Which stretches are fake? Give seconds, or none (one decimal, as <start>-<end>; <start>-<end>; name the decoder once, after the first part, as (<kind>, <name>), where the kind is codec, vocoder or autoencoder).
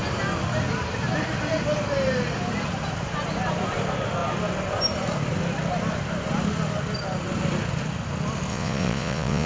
8.5-9.5 (vocoder, Vocos)